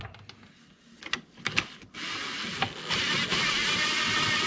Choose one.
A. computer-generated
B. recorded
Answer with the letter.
B